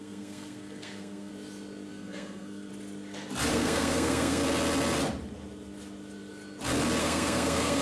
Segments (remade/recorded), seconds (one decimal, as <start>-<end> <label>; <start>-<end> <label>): 0.0-1.3 remade; 1.3-1.9 recorded; 1.9-2.7 remade; 2.7-3.5 recorded; 3.5-4.4 remade; 4.4-7.0 recorded; 7.0-7.8 remade